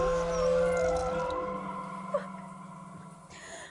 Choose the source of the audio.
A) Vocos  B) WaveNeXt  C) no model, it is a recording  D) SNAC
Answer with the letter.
C